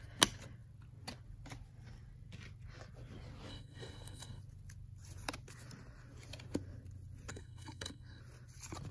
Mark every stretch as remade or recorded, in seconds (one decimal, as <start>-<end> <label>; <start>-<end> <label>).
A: 0.0-3.5 recorded; 3.5-4.4 remade; 4.4-7.3 recorded; 7.3-8.2 remade; 8.2-8.9 recorded